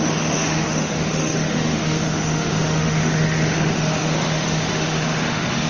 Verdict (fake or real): fake